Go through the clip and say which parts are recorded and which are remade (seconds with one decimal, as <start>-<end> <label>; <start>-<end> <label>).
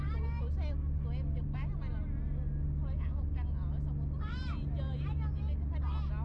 0.0-6.2 recorded